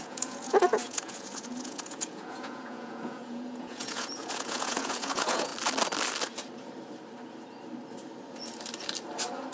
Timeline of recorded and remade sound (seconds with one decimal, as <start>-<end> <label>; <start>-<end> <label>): 0.0-5.5 remade; 5.5-9.5 recorded

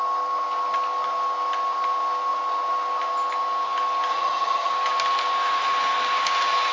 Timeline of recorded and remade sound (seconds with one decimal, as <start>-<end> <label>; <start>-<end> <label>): 0.0-4.1 recorded; 4.1-4.7 remade; 4.7-6.7 recorded

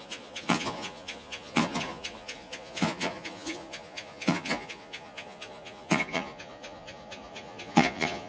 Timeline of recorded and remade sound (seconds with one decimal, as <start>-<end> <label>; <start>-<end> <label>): 0.0-8.3 remade

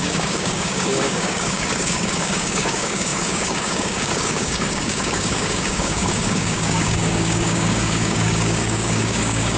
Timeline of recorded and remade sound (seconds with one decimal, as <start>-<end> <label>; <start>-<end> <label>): 0.0-9.6 remade

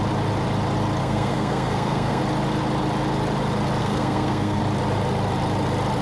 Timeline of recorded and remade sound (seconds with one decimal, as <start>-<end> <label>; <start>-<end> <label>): 0.0-1.0 recorded; 1.0-2.2 remade; 2.2-3.8 recorded; 3.8-4.6 remade; 4.6-6.0 recorded

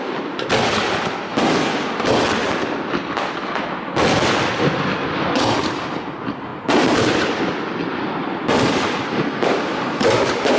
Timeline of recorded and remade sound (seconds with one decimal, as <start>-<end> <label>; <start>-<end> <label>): 0.0-10.6 recorded

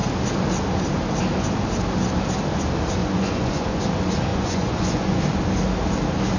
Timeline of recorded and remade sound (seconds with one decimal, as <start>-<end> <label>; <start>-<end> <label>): 0.0-3.0 recorded; 3.0-3.8 remade; 3.8-4.3 recorded; 4.3-5.2 remade; 5.2-6.4 recorded